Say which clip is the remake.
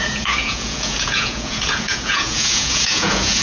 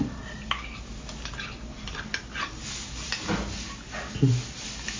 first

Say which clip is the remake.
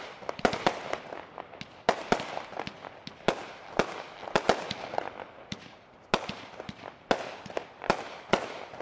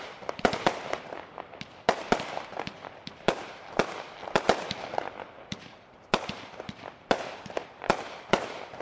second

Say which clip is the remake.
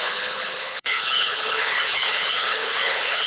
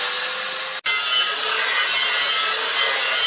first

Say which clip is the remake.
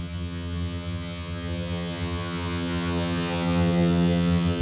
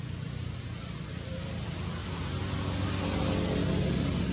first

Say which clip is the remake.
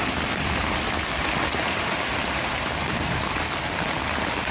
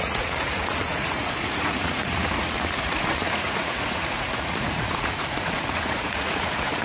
second